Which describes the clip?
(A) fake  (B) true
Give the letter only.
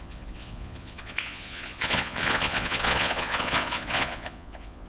A